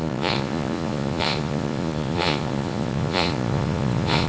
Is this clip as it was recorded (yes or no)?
no